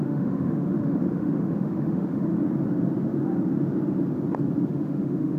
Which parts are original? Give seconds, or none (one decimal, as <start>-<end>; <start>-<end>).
2.3-4.7